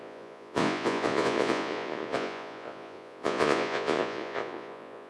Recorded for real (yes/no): no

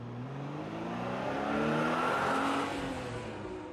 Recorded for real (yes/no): yes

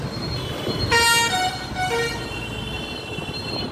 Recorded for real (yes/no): yes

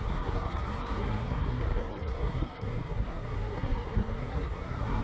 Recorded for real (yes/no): no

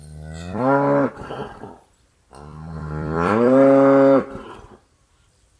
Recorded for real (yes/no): no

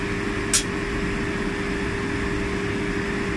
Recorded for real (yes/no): yes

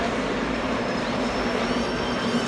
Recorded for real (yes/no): no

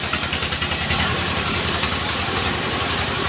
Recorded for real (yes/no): no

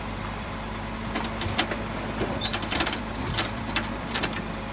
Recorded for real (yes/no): no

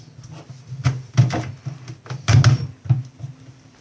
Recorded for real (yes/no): yes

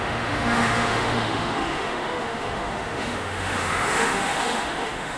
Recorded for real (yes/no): no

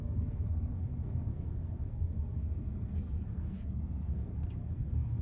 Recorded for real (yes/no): no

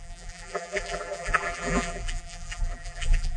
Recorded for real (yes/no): no